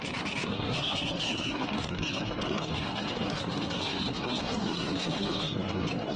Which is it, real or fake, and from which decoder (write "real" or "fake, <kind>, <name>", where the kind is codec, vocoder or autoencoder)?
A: fake, codec, SNAC